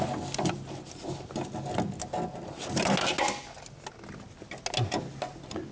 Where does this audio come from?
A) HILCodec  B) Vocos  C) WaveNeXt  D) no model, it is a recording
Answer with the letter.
D